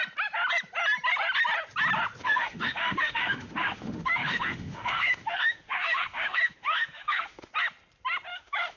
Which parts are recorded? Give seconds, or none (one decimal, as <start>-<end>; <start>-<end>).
0.0-2.2; 7.5-8.3